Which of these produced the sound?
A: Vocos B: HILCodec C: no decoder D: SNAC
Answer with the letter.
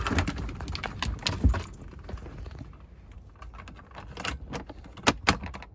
C